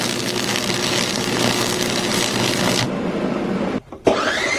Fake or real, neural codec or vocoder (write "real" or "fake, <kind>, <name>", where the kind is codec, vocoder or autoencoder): real